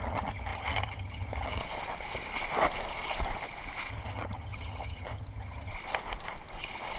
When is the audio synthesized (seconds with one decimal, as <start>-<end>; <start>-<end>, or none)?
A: 0.0-1.6; 3.9-5.7